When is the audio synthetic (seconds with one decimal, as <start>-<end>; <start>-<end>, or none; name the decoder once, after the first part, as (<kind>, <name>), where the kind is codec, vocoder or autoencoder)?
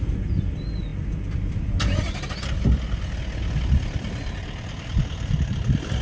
none